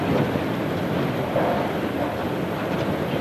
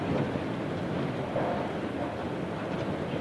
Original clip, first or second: second